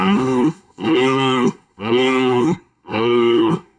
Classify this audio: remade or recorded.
remade